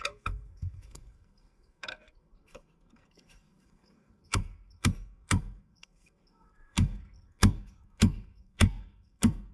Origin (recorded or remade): remade